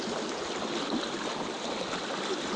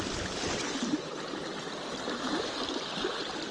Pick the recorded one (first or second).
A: second